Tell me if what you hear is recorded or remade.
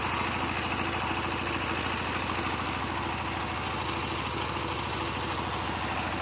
recorded